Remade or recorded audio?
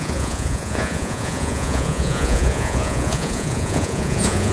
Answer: remade